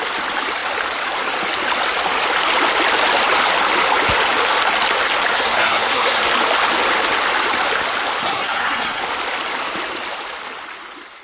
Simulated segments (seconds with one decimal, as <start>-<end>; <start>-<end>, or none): 5.3-6.2; 8.2-9.0